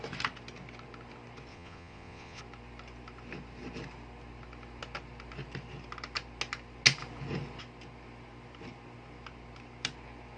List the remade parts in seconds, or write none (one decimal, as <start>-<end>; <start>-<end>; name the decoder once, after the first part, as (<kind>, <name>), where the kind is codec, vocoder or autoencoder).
1.5-2.4 (vocoder, Vocos)